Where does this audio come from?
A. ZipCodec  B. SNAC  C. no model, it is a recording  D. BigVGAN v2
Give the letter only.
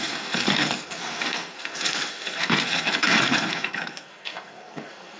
B